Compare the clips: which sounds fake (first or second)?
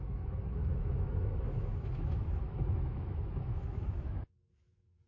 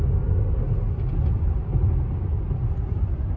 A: first